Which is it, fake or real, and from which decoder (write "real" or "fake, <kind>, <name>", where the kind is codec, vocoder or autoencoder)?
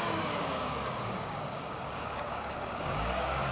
fake, codec, DAC